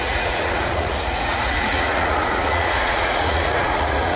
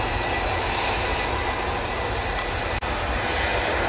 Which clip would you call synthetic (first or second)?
first